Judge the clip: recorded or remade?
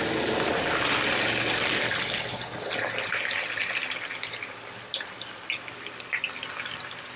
recorded